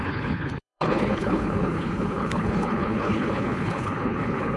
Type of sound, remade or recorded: remade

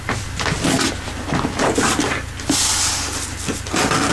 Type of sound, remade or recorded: recorded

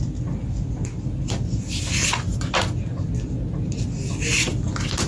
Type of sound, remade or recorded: recorded